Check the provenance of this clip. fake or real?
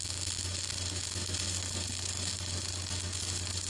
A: real